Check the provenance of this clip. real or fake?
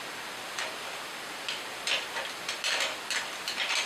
real